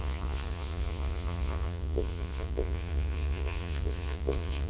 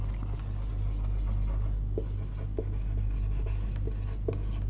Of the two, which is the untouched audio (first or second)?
second